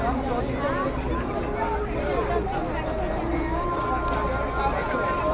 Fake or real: real